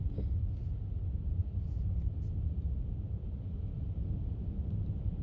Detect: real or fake real